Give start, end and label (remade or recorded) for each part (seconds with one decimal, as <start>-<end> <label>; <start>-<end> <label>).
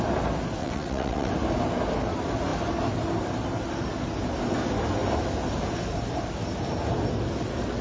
0.0-0.6 recorded; 0.6-1.3 remade; 1.3-7.8 recorded